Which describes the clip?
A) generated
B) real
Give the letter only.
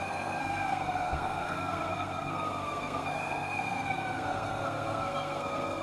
A